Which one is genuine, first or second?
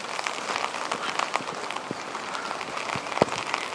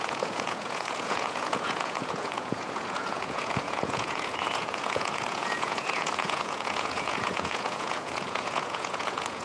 first